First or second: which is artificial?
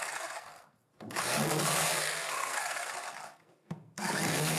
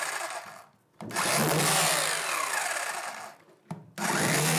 first